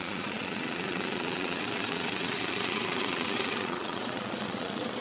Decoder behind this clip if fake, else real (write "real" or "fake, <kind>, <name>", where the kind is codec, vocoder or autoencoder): fake, vocoder, Vocos